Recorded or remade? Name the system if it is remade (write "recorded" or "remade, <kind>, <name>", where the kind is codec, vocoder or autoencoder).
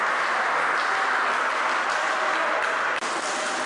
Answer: recorded